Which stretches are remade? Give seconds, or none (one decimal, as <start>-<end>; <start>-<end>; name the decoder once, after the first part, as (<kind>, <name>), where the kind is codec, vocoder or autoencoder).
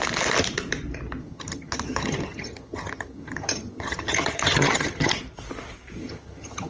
1.2-5.2 (vocoder, HiFi-GAN); 6.0-6.7